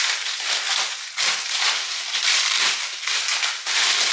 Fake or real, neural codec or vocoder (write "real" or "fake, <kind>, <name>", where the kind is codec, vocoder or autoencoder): fake, vocoder, BigVGAN v2